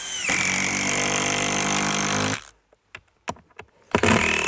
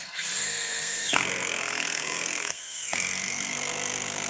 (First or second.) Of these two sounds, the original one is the first